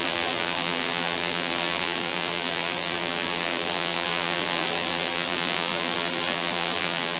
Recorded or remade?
remade